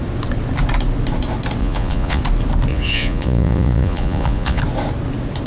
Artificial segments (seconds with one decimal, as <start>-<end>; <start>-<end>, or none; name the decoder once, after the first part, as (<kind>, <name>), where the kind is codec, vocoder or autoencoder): 1.6-2.2 (vocoder, Vocos); 2.7-4.6